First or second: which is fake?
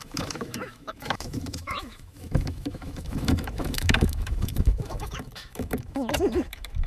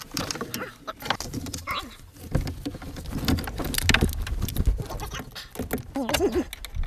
first